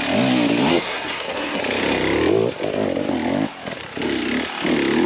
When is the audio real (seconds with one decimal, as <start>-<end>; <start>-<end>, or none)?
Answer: 0.0-0.7; 1.6-5.1